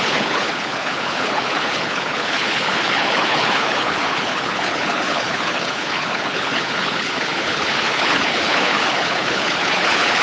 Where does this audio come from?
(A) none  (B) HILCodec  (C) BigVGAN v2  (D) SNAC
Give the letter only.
B